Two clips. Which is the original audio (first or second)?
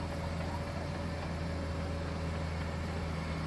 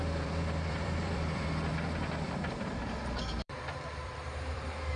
first